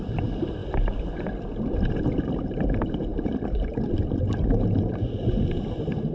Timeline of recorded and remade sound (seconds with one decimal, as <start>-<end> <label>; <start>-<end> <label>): 0.0-6.1 recorded